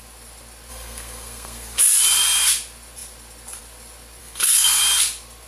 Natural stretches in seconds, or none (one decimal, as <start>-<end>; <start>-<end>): 0.0-0.7; 1.8-4.2; 4.8-5.5